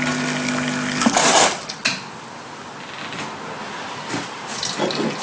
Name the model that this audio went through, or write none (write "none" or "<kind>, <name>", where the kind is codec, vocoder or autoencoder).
none